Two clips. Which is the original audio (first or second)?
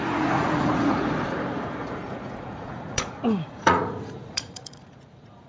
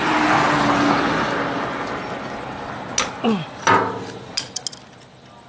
second